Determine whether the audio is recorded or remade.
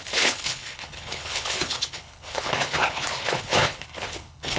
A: remade